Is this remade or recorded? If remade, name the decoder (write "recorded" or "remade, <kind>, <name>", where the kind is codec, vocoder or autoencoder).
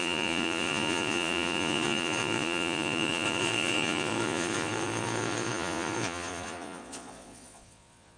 remade, vocoder, Vocos